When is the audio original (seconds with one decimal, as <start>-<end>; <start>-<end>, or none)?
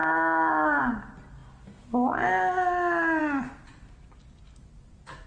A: 0.0-5.3